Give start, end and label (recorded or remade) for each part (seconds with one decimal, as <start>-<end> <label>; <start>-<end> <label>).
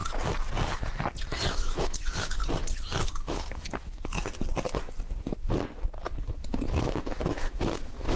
0.0-1.5 recorded; 1.5-2.4 remade; 2.4-3.1 recorded; 3.1-4.2 remade; 4.2-6.8 recorded; 6.8-8.2 remade